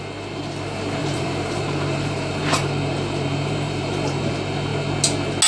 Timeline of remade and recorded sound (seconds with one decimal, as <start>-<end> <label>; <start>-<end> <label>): 0.0-1.0 recorded; 1.0-4.3 remade; 4.3-5.5 recorded